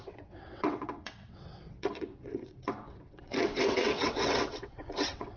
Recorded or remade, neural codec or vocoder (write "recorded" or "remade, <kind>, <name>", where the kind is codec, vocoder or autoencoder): remade, vocoder, WaveNeXt